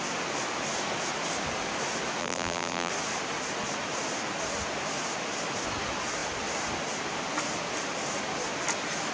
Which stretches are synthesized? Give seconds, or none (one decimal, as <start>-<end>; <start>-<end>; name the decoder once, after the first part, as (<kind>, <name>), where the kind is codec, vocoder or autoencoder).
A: 2.2-2.9 (vocoder, BigVGAN v2)